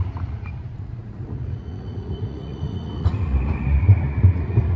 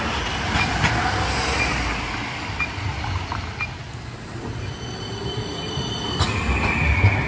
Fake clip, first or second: first